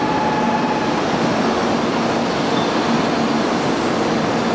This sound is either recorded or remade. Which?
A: recorded